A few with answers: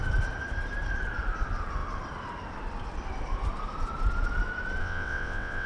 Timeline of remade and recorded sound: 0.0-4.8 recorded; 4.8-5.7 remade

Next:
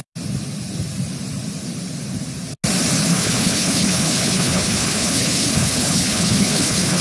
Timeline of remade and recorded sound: 0.0-3.1 recorded; 3.1-7.0 remade